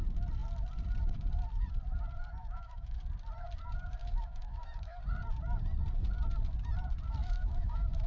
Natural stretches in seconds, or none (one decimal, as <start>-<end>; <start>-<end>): 0.0-2.4; 3.0-4.0; 5.0-7.2